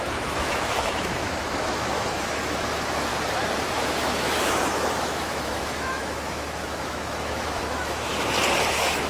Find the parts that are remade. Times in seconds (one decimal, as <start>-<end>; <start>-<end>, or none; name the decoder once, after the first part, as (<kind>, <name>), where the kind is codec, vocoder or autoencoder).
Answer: 0.0-3.1 (autoencoder, DAC-VAE); 3.7-8.1; 8.7-9.1